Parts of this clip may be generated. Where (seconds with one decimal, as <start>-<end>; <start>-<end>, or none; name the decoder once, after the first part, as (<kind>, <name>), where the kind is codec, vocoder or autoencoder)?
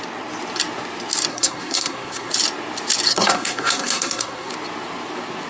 1.3-2.3 (codec, SNAC); 3.1-4.5